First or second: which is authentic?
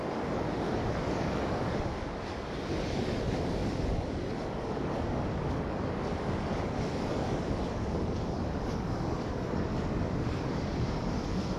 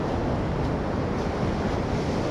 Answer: second